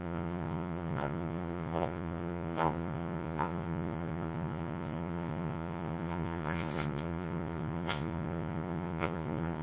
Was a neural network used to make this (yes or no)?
yes